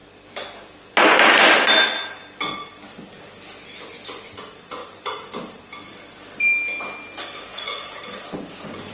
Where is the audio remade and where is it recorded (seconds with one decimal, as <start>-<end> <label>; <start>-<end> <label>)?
0.0-7.5 recorded; 7.5-8.0 remade; 8.0-8.9 recorded